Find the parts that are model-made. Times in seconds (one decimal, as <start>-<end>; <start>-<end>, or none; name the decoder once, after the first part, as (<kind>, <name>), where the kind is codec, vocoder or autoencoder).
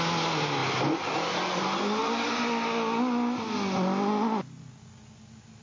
none